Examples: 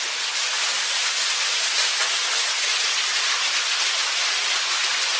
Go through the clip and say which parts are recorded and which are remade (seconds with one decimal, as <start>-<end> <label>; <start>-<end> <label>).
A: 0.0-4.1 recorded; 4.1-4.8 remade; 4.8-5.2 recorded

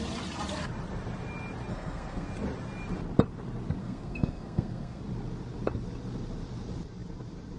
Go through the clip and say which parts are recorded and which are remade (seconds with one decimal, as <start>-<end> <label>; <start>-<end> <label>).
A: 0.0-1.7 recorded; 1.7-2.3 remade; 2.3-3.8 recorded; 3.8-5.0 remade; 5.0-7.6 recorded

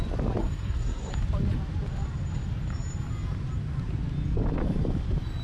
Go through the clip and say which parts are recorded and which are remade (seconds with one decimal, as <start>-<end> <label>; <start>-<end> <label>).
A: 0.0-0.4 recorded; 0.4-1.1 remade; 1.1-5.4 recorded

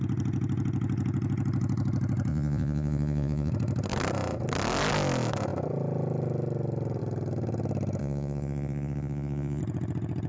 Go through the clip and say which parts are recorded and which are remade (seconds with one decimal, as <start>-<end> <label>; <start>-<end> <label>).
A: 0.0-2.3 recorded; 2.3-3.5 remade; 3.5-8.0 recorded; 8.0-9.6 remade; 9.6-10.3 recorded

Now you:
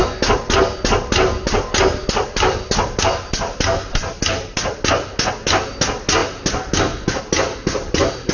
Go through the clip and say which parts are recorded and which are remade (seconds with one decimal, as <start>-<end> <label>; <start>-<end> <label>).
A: 0.0-8.3 recorded